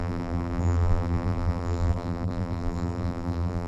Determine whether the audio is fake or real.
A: fake